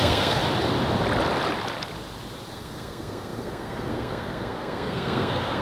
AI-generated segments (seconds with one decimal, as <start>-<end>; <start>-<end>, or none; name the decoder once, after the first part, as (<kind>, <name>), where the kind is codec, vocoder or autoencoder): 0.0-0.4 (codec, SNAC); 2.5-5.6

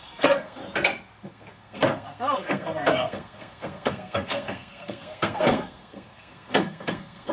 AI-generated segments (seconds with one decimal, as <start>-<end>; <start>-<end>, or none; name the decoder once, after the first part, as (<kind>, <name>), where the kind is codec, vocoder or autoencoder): 0.0-0.6 (codec, SNAC); 1.2-7.3

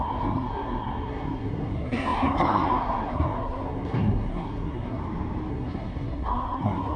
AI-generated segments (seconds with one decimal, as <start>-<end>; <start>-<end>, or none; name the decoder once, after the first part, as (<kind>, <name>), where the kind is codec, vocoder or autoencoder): 0.0-5.0 (codec, SNAC); 5.5-7.0

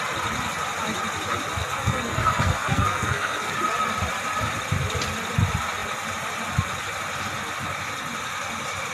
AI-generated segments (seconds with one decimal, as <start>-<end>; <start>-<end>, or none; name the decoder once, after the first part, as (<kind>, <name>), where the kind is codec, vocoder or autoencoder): 1.6-3.5 (codec, SNAC)